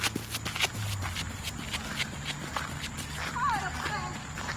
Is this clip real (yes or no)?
yes